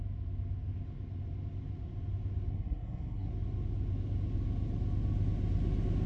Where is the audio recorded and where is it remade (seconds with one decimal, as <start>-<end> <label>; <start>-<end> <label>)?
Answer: 0.0-2.5 recorded; 2.5-3.3 remade; 3.3-6.1 recorded